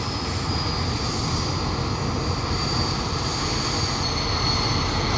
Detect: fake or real real